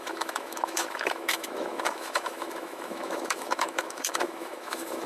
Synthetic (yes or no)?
yes